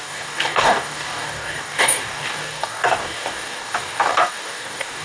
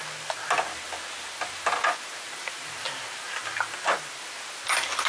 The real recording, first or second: second